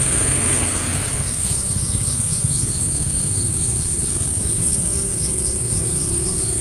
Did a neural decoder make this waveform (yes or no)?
yes